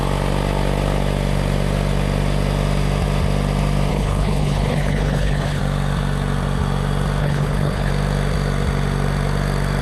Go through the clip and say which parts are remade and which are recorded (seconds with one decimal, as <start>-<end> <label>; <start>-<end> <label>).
0.0-3.9 recorded; 3.9-5.6 remade; 5.6-7.2 recorded; 7.2-7.9 remade; 7.9-9.8 recorded